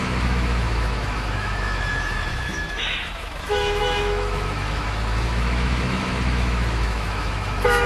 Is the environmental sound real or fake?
fake